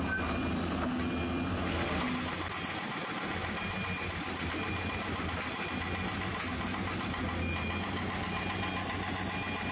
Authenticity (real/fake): real